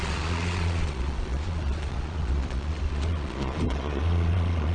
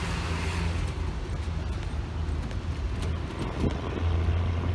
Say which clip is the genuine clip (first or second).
second